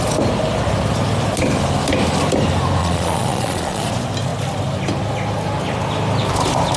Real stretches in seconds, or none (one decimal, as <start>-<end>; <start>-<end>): 0.0-2.8; 3.9-6.8